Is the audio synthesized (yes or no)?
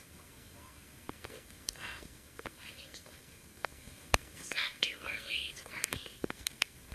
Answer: yes